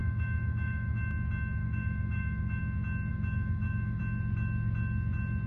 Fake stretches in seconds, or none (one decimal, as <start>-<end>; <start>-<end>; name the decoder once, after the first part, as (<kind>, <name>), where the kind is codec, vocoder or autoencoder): 0.0-1.0 (autoencoder, DAC-VAE); 1.6-2.6; 3.1-4.0